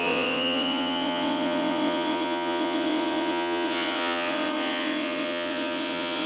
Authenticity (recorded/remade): remade